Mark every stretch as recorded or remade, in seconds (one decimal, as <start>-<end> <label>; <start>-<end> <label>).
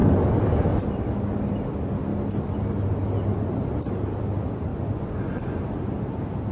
0.0-4.7 recorded; 4.7-5.6 remade; 5.6-6.5 recorded